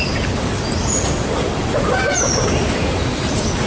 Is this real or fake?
fake